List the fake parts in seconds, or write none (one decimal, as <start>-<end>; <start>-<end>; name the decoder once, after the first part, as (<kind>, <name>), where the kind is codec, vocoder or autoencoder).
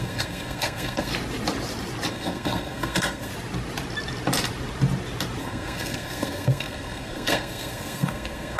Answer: 0.0-1.1 (codec, SNAC); 2.1-3.3; 5.4-8.6